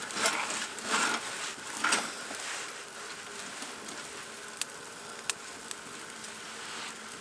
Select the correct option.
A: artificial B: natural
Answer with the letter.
B